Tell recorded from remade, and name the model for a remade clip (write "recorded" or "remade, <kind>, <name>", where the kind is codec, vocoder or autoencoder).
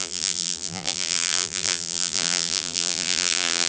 remade, vocoder, BigVGAN v2